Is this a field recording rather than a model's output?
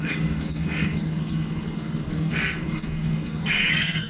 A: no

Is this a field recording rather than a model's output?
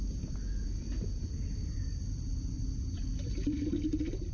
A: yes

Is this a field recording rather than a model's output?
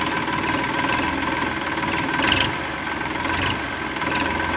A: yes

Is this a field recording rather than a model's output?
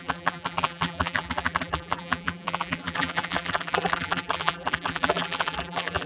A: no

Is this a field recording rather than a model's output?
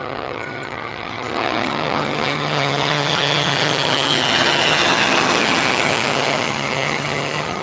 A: no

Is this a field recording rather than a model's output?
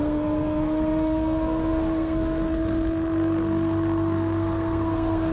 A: no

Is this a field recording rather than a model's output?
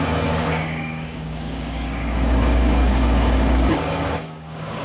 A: no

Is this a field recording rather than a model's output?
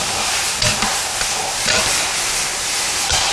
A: yes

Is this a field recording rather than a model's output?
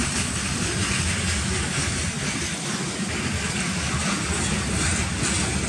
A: yes